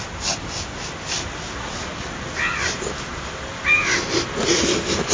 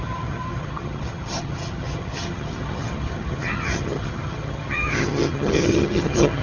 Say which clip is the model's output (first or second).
second